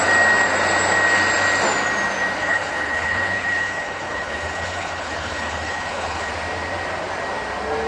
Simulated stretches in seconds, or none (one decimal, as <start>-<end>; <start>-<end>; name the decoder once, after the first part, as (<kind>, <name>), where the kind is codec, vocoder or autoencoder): 2.4-6.3 (codec, HILCodec)